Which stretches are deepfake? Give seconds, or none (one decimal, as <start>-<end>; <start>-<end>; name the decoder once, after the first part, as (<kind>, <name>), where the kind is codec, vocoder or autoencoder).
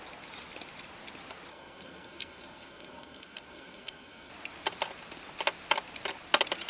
1.5-4.3 (codec, SNAC)